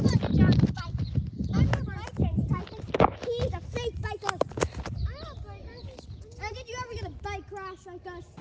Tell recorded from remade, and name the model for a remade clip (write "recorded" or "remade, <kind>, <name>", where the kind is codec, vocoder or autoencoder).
recorded